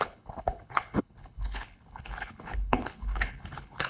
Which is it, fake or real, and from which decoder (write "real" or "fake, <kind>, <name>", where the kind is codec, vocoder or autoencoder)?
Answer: fake, codec, HILCodec